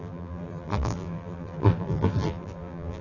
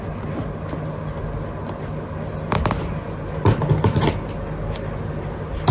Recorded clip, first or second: second